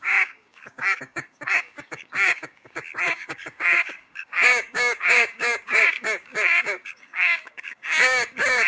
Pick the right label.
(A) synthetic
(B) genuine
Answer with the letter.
A